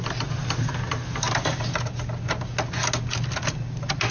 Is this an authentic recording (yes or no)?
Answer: yes